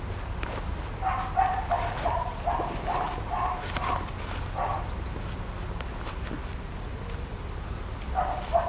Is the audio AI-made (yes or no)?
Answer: no